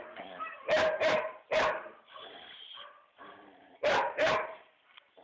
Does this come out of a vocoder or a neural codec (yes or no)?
yes